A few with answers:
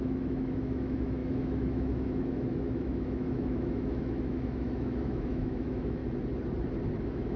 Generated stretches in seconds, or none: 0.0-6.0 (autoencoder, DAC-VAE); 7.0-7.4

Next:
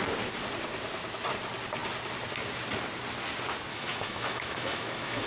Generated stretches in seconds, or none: 3.7-5.3 (autoencoder, DAC-VAE)

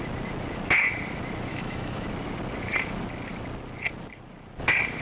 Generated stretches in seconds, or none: 1.5-2.1 (autoencoder, DAC-VAE)

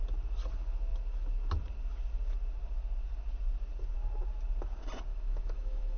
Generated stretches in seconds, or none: 5.1-6.0 (autoencoder, DAC-VAE)

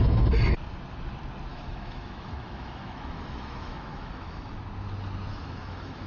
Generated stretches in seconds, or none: 1.5-4.5 (autoencoder, DAC-VAE); 5.3-6.1

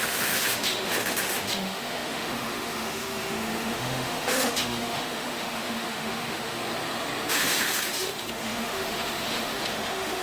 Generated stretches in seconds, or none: 0.0-6.6 (autoencoder, DAC-VAE); 7.3-10.2

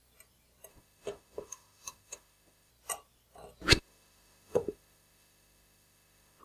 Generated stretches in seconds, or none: 0.7-2.7 (autoencoder, DAC-VAE); 3.7-6.4